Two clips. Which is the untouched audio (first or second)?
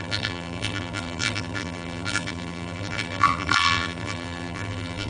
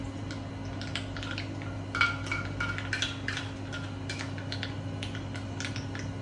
second